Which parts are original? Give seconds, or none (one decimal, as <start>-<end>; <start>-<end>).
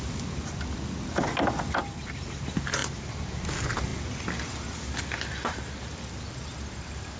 0.0-7.2